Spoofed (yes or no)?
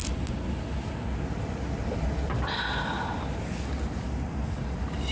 no